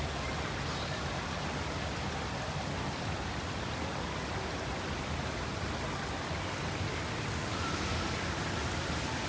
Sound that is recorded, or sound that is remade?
recorded